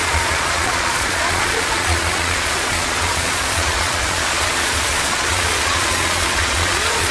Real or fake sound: fake